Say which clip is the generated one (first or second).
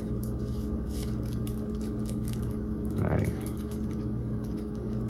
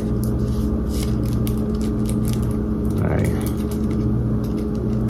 first